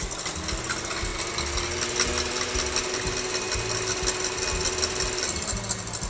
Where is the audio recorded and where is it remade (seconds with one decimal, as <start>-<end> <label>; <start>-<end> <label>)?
0.0-6.1 recorded